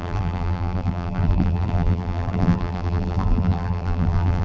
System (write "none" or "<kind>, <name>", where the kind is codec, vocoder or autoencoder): vocoder, BigVGAN v2